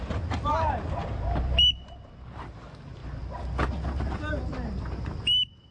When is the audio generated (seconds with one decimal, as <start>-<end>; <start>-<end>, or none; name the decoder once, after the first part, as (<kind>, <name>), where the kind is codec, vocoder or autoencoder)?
none